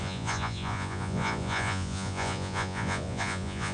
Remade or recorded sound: remade